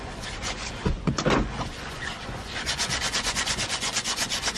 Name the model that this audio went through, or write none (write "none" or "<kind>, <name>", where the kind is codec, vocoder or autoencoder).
vocoder, Vocos